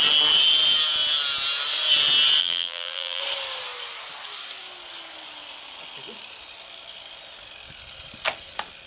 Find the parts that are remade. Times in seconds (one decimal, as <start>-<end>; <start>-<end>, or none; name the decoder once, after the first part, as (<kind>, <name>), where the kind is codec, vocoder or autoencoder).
2.4-3.2 (vocoder, BigVGAN v2)